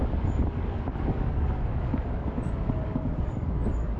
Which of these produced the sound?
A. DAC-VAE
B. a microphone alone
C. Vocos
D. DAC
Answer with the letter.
D